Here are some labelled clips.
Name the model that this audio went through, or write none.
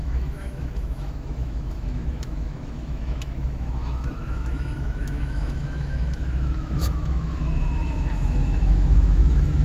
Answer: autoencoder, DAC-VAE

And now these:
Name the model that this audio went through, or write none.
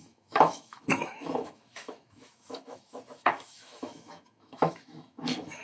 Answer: autoencoder, DAC-VAE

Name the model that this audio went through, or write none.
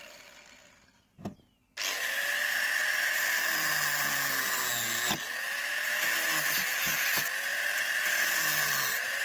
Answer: none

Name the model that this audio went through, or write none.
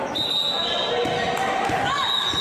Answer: none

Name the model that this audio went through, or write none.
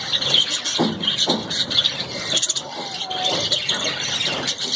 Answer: none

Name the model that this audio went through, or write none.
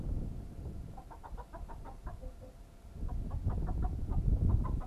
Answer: none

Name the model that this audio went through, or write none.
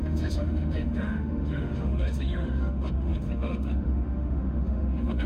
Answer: autoencoder, DAC-VAE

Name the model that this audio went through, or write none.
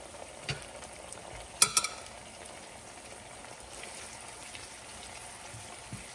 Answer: none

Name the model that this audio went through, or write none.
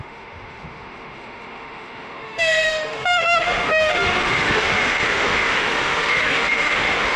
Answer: autoencoder, DAC-VAE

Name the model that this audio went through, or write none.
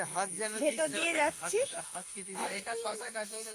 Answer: autoencoder, DAC-VAE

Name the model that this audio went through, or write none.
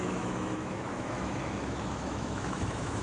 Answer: autoencoder, DAC-VAE